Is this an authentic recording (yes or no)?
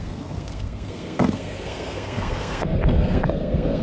no